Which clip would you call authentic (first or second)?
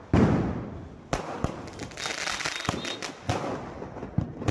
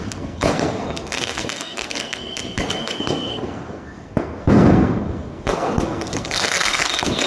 first